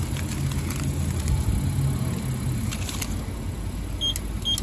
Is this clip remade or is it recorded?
recorded